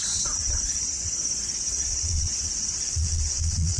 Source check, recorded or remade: remade